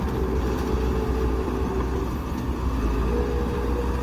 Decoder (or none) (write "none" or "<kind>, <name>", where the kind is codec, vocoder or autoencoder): none